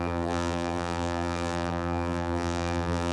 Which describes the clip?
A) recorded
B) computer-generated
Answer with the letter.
B